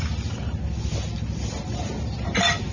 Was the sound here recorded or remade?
recorded